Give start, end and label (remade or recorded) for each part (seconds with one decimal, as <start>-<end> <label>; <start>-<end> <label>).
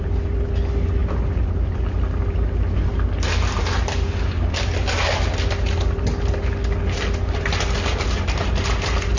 0.0-9.2 remade